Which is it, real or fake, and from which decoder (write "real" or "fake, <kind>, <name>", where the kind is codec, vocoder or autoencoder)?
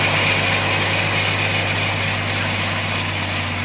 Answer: real